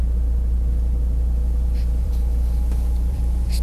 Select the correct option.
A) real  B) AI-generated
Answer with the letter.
B